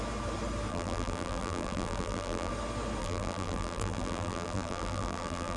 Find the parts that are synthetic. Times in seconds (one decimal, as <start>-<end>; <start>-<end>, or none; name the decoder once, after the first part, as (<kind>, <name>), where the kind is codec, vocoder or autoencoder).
0.7-2.5 (vocoder, BigVGAN v2); 3.0-5.6